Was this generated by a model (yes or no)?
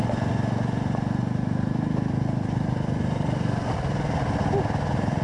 no